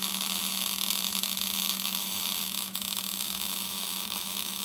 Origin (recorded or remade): remade